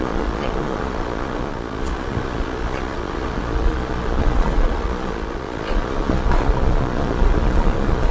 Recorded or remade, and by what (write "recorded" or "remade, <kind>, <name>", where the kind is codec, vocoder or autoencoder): remade, vocoder, Vocos